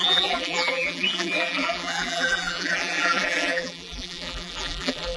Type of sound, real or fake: fake